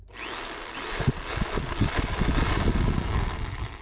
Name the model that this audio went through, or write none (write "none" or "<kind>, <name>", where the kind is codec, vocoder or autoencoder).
none